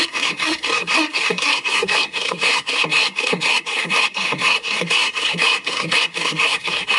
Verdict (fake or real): fake